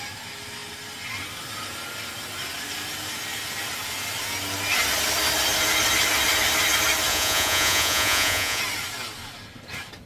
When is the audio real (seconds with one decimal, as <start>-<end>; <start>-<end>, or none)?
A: 0.0-7.1; 8.6-10.1